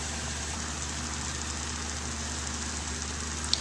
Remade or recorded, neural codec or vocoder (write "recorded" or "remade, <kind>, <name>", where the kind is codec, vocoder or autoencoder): recorded